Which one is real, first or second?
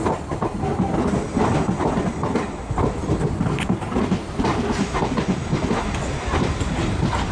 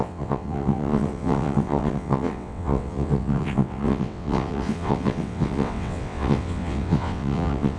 first